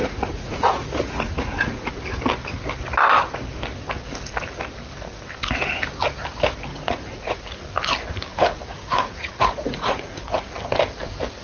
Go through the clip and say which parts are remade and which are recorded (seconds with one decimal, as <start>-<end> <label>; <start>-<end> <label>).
0.0-1.9 remade; 1.9-6.7 recorded; 6.7-7.4 remade; 7.4-8.3 recorded; 8.3-10.2 remade; 10.2-11.4 recorded